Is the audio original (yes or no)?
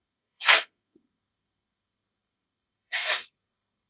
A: no